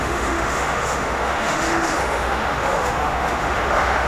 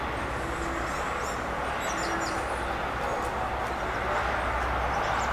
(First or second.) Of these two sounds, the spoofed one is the first